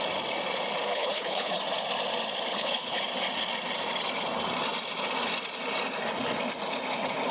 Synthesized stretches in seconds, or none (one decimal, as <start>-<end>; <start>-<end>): 0.9-1.6; 2.5-3.0